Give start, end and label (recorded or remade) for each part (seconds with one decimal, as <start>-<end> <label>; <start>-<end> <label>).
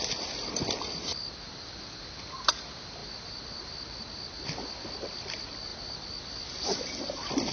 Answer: 0.0-7.5 recorded